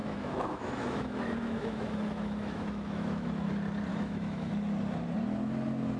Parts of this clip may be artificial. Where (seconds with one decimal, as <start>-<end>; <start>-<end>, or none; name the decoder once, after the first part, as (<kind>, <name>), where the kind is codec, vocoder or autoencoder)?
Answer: 0.0-3.5 (autoencoder, DAC-VAE); 3.9-4.5